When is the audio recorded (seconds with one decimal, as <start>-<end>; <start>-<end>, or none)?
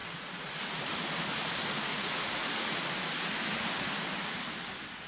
0.7-1.9; 2.8-5.1